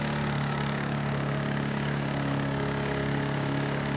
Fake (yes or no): yes